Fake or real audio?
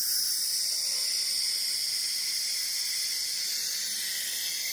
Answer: real